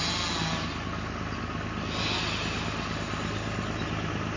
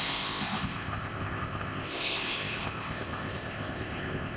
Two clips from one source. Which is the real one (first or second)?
first